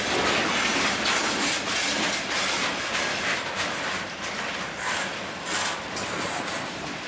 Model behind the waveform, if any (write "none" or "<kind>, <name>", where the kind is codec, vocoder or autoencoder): none